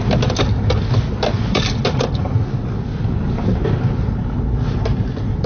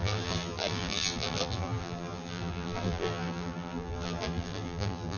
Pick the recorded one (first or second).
first